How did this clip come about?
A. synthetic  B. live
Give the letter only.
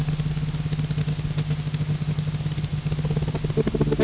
B